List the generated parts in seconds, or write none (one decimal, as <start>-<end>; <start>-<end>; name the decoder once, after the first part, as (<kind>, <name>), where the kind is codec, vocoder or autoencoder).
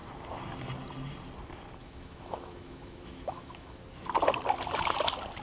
1.8-3.8 (autoencoder, DAC-VAE)